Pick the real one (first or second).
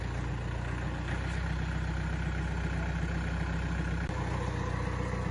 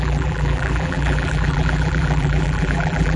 first